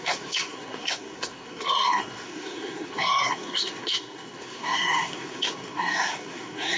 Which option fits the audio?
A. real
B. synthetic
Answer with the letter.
B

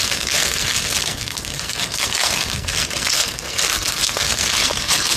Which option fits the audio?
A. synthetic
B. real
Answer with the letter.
A